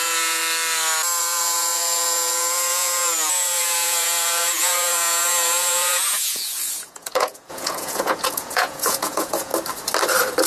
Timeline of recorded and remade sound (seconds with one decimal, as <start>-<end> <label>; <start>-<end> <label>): 0.0-0.4 remade; 0.4-1.2 recorded; 1.2-9.5 remade; 9.5-10.5 recorded